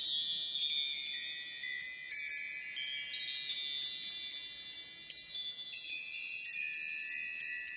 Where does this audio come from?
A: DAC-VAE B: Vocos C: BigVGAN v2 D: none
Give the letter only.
D